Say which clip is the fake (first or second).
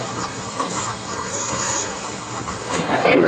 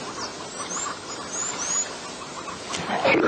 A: first